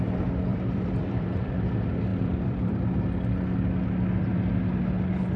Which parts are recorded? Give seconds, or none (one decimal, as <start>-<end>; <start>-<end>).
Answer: 0.0-0.5; 1.5-2.1; 2.6-5.4